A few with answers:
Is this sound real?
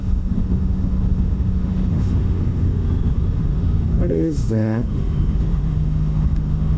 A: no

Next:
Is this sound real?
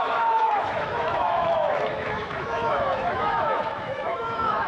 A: no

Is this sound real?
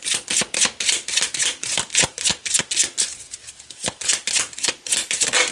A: yes